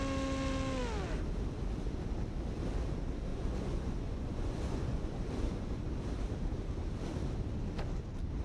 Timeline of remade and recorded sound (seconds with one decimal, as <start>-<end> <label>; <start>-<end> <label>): 0.0-3.3 recorded; 3.3-5.9 remade; 5.9-8.4 recorded